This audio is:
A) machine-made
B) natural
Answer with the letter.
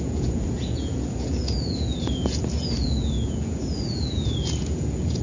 A